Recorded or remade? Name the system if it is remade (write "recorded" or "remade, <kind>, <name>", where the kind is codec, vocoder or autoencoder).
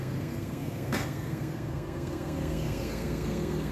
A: remade, codec, SNAC